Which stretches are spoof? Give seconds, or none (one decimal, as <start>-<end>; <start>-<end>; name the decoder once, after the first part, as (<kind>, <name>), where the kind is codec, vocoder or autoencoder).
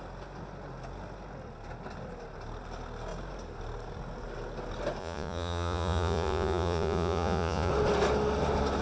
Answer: 5.0-7.7 (vocoder, Vocos)